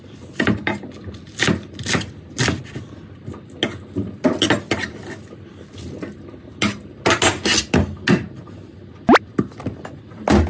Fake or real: real